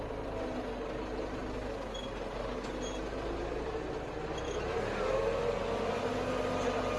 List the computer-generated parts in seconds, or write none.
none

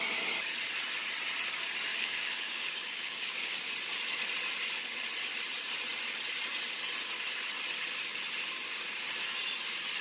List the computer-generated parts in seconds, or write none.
1.9-3.7

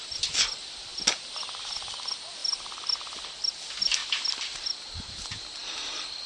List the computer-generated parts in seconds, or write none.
2.4-3.3; 5.6-6.3

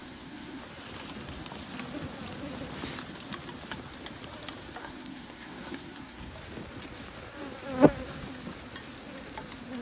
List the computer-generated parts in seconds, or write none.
0.0-0.6; 4.8-6.3